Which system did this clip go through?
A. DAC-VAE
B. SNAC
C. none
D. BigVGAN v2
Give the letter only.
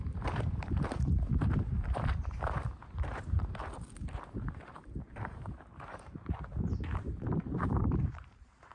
D